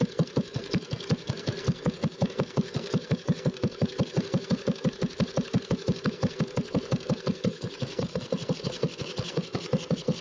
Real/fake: fake